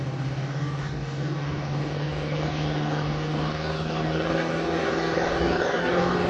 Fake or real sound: fake